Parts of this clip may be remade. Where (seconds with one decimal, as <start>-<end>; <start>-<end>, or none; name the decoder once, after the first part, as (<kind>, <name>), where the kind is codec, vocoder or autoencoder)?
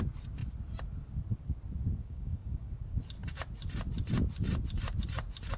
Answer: 2.0-2.7 (codec, DAC)